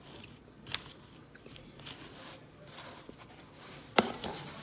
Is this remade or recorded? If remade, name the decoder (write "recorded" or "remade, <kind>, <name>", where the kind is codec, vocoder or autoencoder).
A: remade, vocoder, BigVGAN v2